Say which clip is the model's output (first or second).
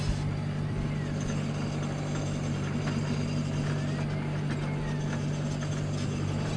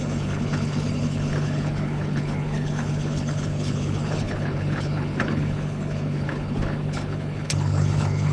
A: second